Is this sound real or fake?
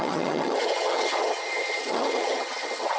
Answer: fake